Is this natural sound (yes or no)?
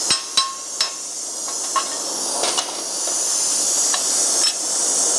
yes